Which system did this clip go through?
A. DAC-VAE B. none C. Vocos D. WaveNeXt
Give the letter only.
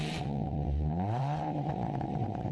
D